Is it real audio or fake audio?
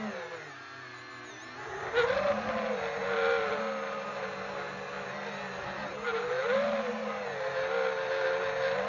real